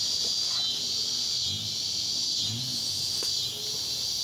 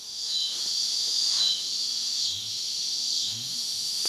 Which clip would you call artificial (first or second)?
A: second